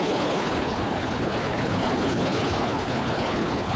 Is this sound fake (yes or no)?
yes